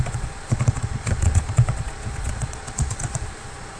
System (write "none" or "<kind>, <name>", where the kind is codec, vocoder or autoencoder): vocoder, Vocos